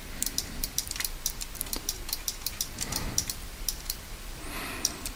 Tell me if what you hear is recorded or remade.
remade